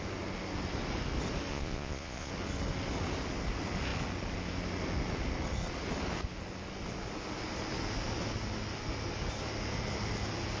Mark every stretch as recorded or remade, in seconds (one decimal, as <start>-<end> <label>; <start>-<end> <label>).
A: 0.0-1.5 recorded; 1.5-2.3 remade; 2.3-10.6 recorded